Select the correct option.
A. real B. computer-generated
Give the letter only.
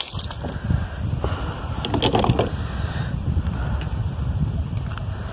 A